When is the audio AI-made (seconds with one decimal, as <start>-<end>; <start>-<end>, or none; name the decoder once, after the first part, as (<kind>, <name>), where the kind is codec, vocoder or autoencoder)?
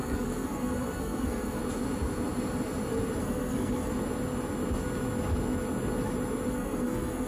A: 0.0-1.6 (codec, SNAC); 3.2-3.9; 6.5-7.3